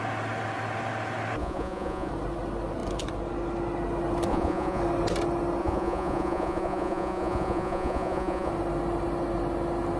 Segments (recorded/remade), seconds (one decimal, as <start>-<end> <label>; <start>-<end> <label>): 0.0-1.4 recorded; 1.4-2.1 remade; 2.1-4.3 recorded; 4.3-4.8 remade; 4.8-5.6 recorded; 5.6-8.5 remade; 8.5-10.0 recorded